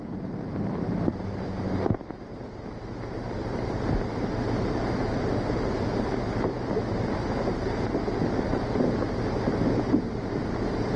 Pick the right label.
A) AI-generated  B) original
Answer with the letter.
A